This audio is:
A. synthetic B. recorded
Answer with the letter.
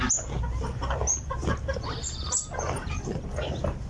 B